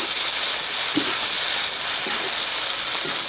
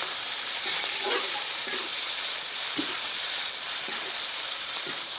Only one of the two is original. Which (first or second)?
first